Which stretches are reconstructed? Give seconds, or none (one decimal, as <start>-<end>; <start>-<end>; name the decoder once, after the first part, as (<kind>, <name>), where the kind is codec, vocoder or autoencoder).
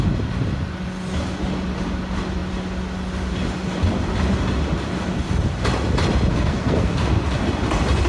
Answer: 6.3-6.9 (codec, SNAC)